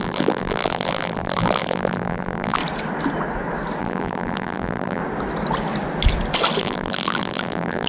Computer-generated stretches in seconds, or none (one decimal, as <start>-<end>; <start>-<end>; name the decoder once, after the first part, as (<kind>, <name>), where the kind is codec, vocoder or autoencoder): 0.0-2.6 (vocoder, BigVGAN v2); 3.8-5.0; 6.6-7.9